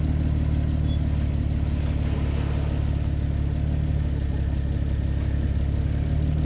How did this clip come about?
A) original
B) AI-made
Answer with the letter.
A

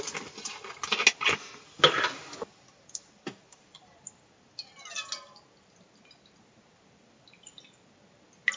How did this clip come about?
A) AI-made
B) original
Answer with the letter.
B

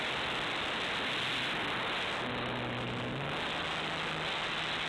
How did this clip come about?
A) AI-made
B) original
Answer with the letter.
B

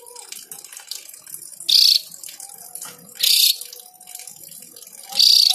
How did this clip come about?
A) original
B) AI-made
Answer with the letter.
A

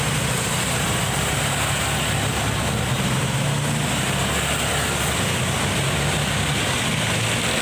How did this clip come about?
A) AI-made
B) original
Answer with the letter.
B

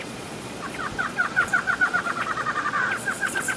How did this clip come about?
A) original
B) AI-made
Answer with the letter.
B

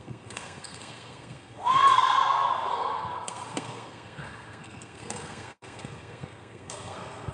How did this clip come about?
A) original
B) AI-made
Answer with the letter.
B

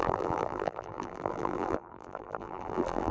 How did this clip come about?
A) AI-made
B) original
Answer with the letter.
A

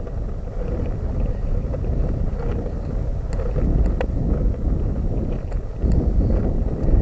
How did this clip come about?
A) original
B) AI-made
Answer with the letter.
A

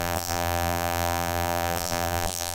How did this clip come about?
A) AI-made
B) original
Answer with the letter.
A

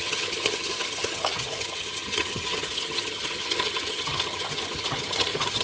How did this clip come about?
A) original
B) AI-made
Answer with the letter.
B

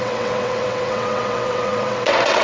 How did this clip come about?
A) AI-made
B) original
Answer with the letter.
A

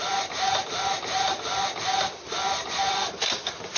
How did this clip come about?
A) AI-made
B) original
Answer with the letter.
B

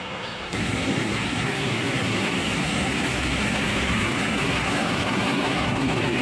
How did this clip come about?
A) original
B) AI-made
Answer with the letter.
B